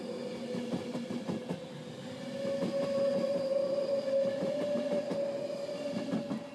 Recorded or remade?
recorded